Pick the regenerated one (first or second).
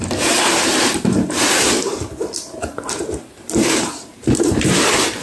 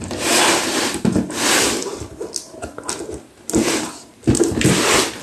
first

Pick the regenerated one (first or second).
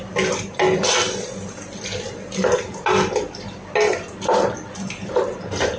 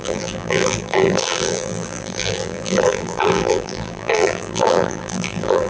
second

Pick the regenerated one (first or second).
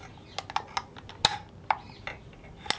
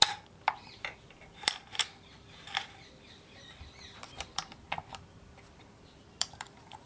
second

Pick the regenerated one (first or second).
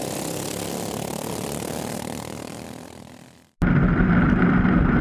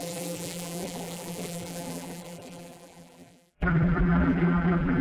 second